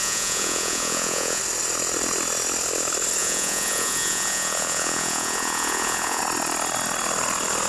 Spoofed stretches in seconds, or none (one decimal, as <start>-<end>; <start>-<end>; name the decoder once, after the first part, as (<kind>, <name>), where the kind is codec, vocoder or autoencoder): 0.0-1.4 (vocoder, Vocos); 3.2-6.2